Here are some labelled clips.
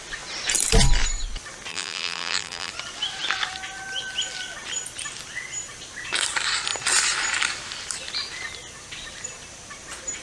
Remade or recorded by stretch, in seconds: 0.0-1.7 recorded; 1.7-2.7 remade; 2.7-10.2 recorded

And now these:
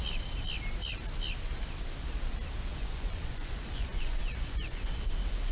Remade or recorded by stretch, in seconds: 0.0-2.7 recorded; 2.7-4.9 remade; 4.9-5.5 recorded

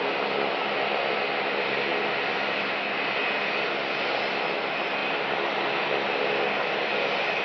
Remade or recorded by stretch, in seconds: 0.0-7.4 recorded

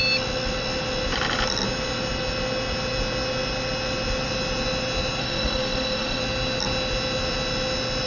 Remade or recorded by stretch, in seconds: 0.0-5.2 recorded; 5.2-6.2 remade; 6.2-8.1 recorded

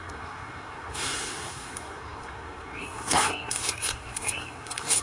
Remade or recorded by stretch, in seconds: 0.0-5.0 remade